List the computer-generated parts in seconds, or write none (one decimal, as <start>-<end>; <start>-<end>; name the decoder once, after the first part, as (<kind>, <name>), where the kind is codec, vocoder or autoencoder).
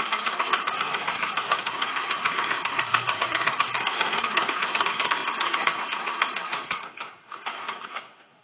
0.0-8.4 (codec, SNAC)